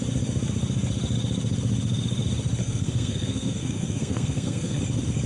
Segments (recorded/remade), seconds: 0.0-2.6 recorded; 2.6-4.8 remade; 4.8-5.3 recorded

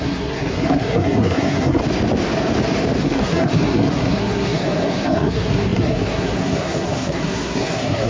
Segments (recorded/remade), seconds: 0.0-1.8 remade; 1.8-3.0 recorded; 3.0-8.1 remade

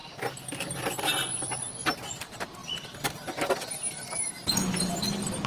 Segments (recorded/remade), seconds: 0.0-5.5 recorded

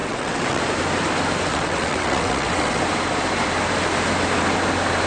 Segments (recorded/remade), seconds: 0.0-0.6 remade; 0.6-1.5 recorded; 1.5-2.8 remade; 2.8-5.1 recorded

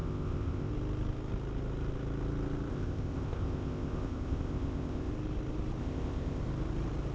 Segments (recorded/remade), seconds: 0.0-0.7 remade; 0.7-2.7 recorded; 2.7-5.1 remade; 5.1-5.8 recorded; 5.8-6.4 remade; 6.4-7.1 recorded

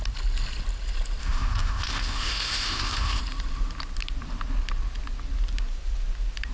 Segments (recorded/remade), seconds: 0.0-1.2 recorded; 1.2-3.2 remade; 3.2-6.5 recorded

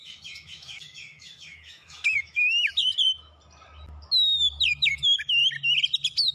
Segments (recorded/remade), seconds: 0.0-2.9 remade; 2.9-4.7 recorded; 4.7-5.4 remade; 5.4-6.3 recorded

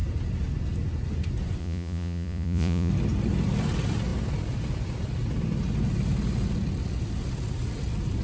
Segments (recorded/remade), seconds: 0.0-1.6 recorded; 1.6-2.9 remade; 2.9-8.2 recorded